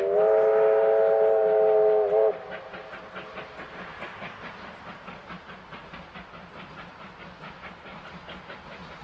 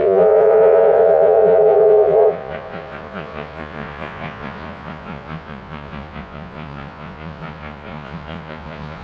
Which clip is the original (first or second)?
first